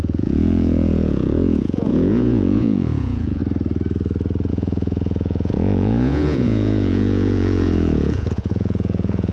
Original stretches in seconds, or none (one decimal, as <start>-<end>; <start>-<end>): 3.4-4.5

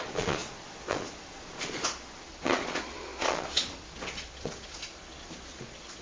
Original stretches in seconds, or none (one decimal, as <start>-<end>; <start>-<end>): none